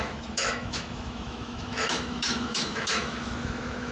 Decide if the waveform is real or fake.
fake